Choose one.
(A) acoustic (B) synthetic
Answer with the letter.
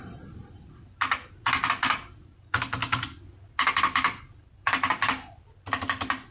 A